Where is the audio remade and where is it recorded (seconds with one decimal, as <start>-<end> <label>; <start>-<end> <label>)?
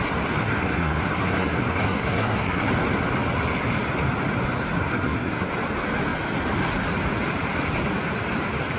0.0-0.4 recorded; 0.4-2.7 remade; 2.7-4.8 recorded; 4.8-5.5 remade; 5.5-8.8 recorded